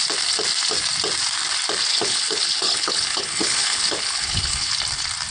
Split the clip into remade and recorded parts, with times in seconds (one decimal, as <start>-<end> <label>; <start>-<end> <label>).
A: 0.0-1.9 recorded; 1.9-4.7 remade; 4.7-5.3 recorded